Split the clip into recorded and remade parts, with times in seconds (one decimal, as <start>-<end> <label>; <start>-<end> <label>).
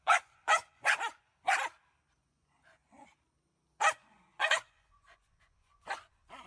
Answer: 0.0-1.3 remade; 1.3-2.2 recorded; 2.2-3.1 remade; 3.1-3.9 recorded; 3.9-6.5 remade